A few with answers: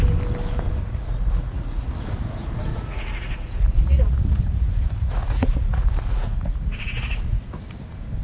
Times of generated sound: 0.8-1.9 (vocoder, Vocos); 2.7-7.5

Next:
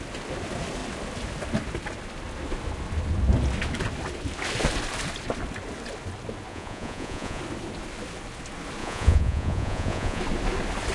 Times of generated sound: 6.5-7.4 (vocoder, Vocos); 8.8-10.2

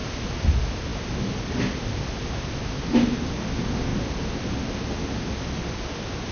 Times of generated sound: none

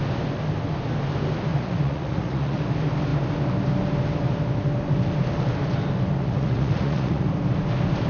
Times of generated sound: 1.5-2.6 (vocoder, Vocos); 6.2-7.3